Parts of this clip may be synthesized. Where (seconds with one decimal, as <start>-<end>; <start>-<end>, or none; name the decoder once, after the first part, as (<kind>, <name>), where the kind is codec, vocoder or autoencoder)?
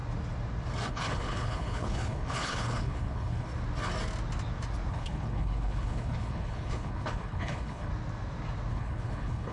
0.9-3.5 (codec, HILCodec); 4.9-7.9; 8.7-9.5